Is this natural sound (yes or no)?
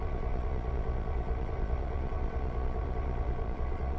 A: no